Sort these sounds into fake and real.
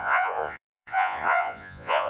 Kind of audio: fake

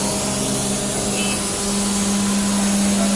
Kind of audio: real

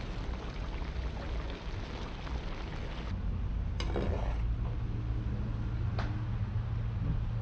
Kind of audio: real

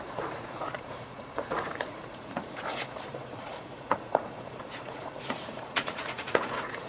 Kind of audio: fake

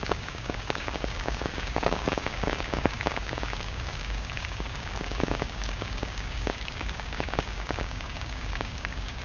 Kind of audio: fake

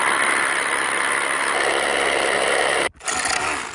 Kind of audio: real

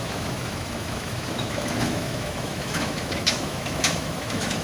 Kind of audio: fake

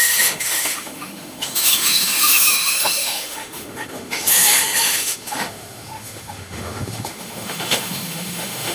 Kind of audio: fake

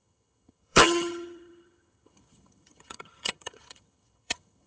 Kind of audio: fake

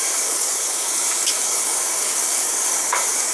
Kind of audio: fake